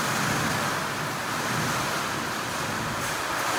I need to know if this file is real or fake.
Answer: real